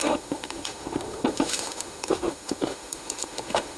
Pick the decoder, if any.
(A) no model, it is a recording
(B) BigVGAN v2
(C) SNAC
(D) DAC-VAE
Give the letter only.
D